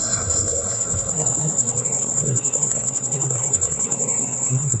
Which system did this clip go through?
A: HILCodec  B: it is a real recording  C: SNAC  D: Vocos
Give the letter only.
C